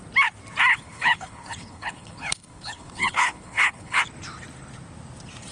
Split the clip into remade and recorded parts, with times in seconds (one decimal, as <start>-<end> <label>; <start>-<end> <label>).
0.0-0.7 recorded; 0.7-4.0 remade; 4.0-5.5 recorded